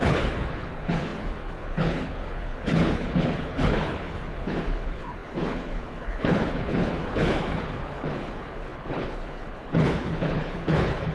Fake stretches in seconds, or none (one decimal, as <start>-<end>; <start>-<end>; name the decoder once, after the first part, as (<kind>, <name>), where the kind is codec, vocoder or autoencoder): 0.0-11.1 (codec, HILCodec)